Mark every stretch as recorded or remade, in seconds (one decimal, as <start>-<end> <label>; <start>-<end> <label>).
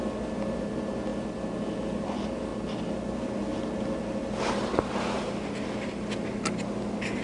0.0-7.2 recorded